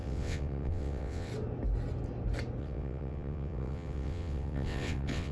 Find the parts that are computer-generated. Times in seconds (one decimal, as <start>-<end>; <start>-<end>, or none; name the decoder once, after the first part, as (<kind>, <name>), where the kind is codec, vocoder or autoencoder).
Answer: 0.0-1.3 (vocoder, WaveNeXt); 2.6-5.3